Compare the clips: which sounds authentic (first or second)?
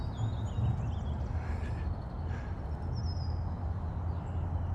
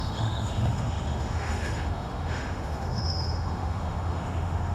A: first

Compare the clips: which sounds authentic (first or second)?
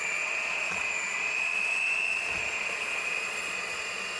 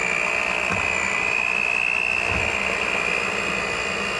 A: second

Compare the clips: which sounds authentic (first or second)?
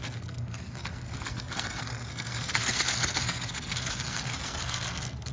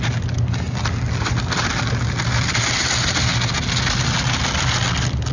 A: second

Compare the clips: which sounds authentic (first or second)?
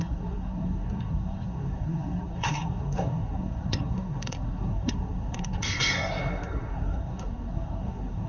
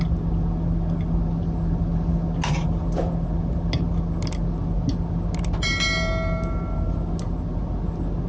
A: second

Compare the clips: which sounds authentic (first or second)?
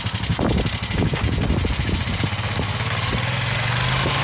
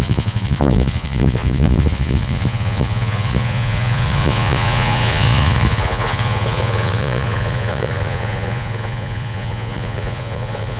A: first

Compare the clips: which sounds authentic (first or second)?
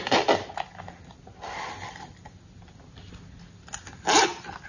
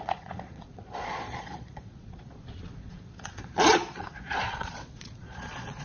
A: first